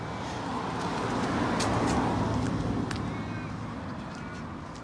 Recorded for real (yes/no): yes